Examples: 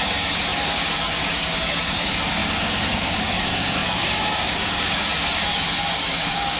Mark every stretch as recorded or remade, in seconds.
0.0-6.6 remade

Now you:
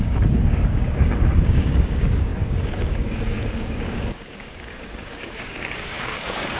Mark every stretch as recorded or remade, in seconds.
0.0-6.6 remade

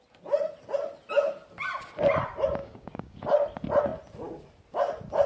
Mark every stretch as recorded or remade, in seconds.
0.0-2.6 recorded; 2.6-3.2 remade; 3.2-5.3 recorded